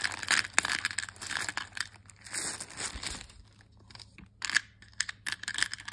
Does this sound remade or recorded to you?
recorded